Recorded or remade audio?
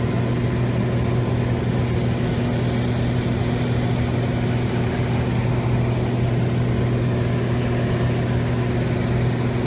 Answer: recorded